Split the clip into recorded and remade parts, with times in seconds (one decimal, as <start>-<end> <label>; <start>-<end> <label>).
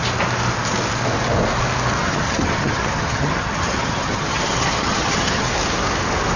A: 0.0-2.0 recorded; 2.0-5.5 remade; 5.5-6.4 recorded